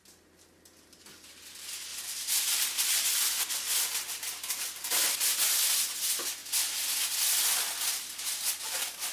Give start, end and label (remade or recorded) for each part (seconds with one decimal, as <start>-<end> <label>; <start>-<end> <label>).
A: 0.0-1.9 recorded; 1.9-5.4 remade; 5.4-9.1 recorded